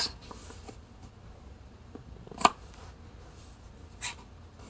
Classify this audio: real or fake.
real